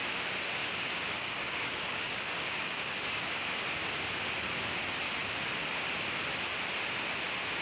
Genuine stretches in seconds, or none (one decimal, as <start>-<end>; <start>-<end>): 0.0-0.6; 3.3-7.6